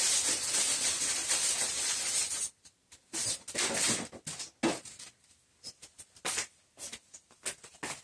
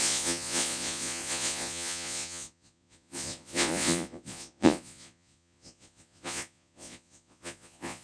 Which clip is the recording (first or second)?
first